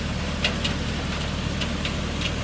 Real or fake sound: real